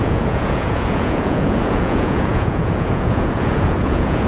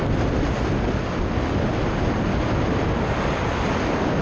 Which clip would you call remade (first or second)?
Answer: first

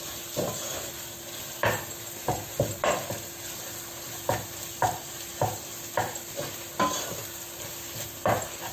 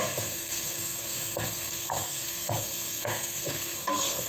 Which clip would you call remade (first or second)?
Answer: second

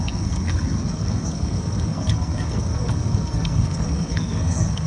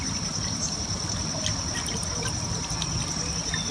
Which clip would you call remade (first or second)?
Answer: first